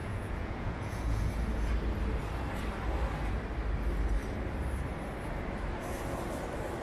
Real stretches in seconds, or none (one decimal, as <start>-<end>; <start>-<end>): 1.3-6.8